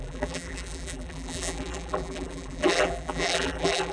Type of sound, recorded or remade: remade